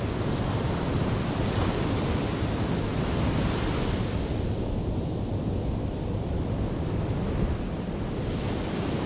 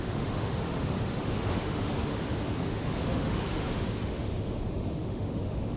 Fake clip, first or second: second